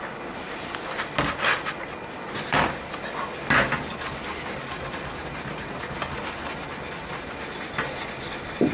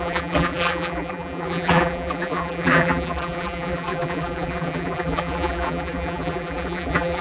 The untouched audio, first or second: first